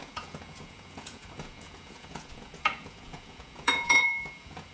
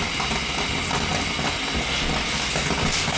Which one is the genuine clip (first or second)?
second